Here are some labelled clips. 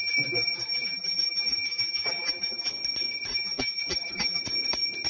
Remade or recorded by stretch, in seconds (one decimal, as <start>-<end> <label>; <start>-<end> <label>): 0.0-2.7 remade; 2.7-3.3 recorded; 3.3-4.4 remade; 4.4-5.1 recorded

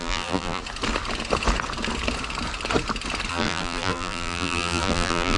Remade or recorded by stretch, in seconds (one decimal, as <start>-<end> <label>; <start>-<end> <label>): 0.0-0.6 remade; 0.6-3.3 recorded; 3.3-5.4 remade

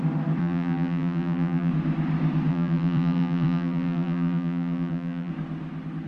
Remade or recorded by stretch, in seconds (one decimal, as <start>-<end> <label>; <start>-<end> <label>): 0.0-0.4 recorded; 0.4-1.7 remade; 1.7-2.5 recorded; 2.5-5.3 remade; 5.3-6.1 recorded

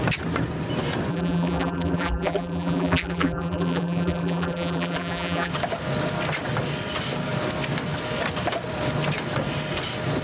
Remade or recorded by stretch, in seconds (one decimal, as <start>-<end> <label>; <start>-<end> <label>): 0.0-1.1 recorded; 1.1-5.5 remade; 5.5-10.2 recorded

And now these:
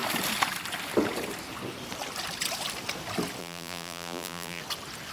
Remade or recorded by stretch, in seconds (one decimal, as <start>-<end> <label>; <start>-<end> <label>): 0.0-3.4 recorded; 3.4-4.6 remade; 4.6-5.1 recorded